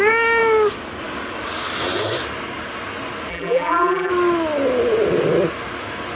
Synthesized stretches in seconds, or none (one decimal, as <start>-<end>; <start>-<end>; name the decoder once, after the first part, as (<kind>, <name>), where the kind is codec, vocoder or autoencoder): 3.3-4.1 (vocoder, BigVGAN v2)

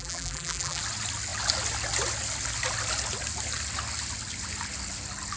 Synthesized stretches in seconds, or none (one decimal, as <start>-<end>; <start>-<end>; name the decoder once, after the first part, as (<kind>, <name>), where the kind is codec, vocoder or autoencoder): 0.0-0.8 (vocoder, BigVGAN v2)

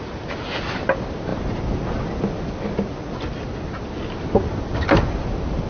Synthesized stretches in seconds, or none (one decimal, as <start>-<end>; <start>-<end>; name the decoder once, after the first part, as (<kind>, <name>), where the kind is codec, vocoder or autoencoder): none

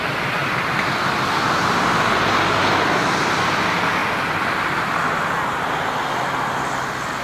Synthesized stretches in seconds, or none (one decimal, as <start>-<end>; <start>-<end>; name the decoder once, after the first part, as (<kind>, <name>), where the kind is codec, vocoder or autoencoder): none